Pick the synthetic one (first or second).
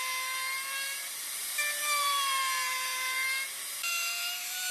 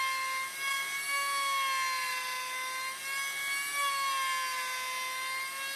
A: first